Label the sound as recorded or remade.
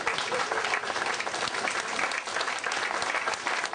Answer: recorded